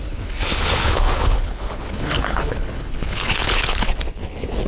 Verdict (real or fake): fake